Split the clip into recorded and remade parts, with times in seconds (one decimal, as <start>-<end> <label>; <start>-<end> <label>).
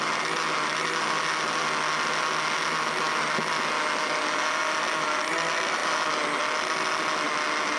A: 0.0-7.8 recorded